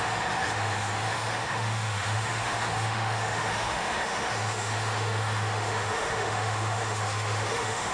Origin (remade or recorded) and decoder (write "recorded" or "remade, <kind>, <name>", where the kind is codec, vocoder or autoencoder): remade, autoencoder, DAC-VAE